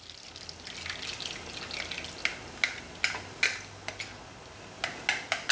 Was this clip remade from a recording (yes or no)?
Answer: no